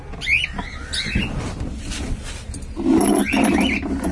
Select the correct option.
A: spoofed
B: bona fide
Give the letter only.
B